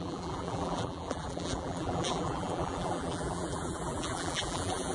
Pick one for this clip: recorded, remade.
remade